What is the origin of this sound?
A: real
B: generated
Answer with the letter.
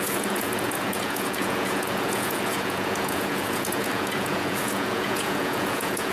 B